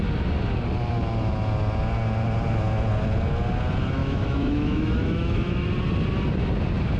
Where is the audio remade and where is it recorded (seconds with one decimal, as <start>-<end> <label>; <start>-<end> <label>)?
0.0-4.0 recorded; 4.0-5.7 remade; 5.7-7.0 recorded